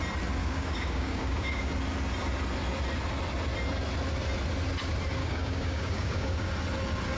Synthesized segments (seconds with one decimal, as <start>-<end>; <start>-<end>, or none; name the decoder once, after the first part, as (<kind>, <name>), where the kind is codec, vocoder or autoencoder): 0.4-1.7 (codec, DAC); 5.2-6.5